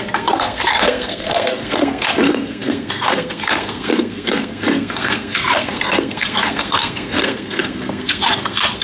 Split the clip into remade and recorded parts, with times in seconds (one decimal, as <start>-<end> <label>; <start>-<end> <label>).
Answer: 0.0-8.8 remade